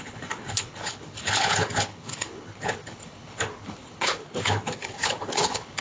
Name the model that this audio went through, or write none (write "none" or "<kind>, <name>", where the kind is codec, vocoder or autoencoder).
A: codec, HILCodec